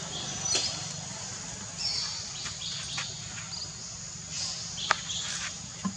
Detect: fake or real real